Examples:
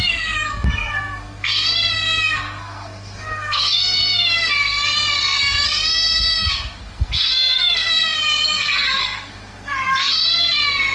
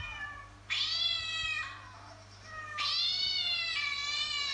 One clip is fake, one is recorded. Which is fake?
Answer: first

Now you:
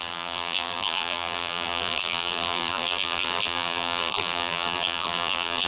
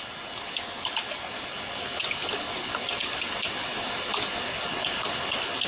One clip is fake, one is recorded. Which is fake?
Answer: first